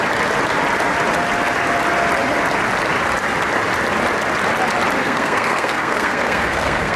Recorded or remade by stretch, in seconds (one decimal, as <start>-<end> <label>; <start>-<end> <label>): 0.0-5.0 recorded; 5.0-7.0 remade